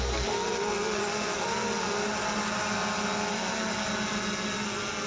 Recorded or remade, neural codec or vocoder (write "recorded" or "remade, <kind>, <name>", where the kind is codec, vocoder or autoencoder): recorded